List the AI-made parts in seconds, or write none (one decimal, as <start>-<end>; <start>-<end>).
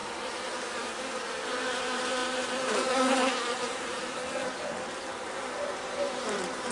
1.8-6.7